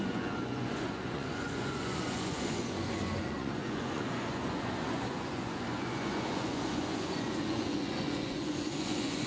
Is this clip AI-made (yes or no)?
yes